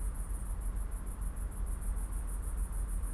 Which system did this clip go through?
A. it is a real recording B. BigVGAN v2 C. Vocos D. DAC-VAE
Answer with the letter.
A